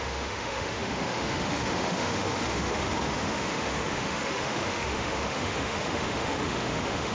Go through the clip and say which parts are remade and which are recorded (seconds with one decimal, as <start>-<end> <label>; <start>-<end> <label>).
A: 0.0-7.1 remade